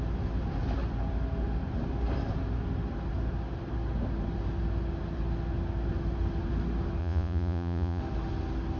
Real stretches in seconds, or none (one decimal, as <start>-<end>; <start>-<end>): 0.0-7.0; 8.0-8.8